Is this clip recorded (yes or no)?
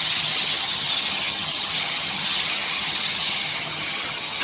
no